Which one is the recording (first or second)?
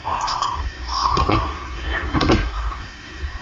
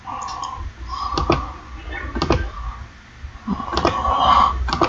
second